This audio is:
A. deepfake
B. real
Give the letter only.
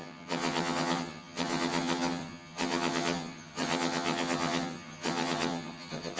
A